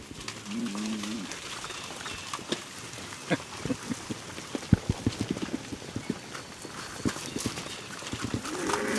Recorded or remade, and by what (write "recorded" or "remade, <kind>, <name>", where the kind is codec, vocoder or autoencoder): recorded